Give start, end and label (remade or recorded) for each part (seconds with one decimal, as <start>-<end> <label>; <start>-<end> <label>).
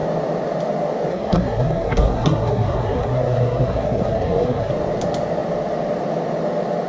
0.0-1.1 recorded; 1.1-4.7 remade; 4.7-6.9 recorded